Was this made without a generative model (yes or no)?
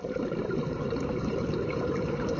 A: no